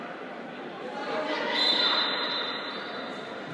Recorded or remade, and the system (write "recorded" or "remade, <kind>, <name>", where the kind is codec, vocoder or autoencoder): remade, vocoder, BigVGAN v2